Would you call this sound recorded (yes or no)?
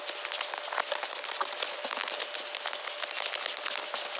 yes